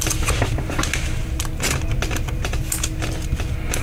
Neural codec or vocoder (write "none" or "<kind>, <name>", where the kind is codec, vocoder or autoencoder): none